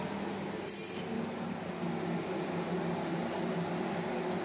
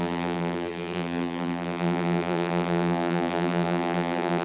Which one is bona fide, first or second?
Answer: first